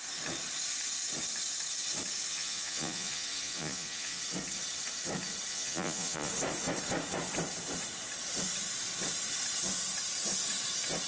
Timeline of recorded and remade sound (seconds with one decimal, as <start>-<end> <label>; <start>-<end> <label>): 0.0-2.3 recorded; 2.3-4.2 remade; 4.2-5.5 recorded; 5.5-6.3 remade; 6.3-11.1 recorded